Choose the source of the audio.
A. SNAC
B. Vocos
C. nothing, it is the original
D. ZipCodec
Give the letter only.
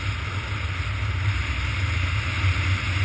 C